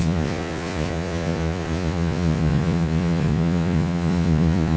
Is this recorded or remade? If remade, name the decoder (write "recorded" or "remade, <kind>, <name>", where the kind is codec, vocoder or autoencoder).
remade, vocoder, Vocos